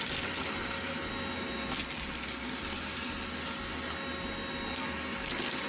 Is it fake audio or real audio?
real